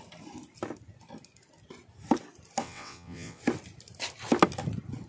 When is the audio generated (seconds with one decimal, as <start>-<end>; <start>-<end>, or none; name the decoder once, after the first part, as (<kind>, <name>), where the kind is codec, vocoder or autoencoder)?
2.6-3.4 (vocoder, WaveNeXt)

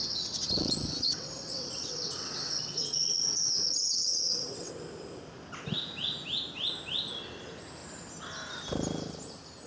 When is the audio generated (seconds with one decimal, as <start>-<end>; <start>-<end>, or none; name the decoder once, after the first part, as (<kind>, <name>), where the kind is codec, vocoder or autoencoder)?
0.0-4.7 (vocoder, WaveNeXt)

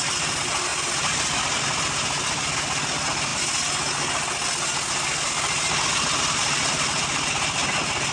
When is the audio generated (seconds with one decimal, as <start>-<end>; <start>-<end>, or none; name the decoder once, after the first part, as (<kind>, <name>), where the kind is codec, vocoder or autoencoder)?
none